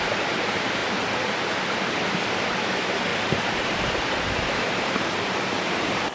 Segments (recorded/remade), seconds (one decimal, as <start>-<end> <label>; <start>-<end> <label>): 0.0-3.1 recorded; 3.1-6.1 remade